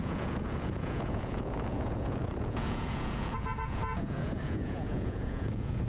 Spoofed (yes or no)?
yes